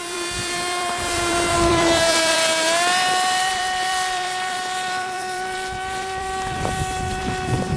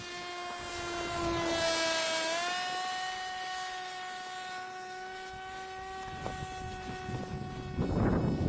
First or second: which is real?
second